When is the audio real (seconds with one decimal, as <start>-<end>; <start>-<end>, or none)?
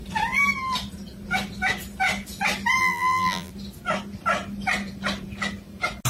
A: 0.0-2.8; 3.5-6.1